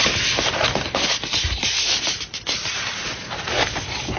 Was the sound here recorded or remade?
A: recorded